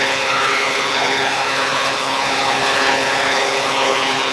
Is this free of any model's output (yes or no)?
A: no